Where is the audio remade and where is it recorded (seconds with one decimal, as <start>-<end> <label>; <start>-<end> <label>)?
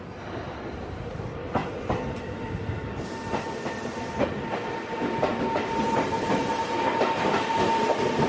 0.0-8.3 recorded